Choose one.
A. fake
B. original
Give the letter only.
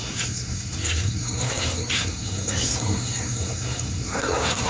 A